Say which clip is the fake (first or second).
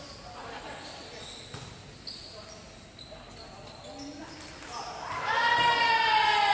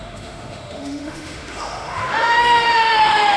second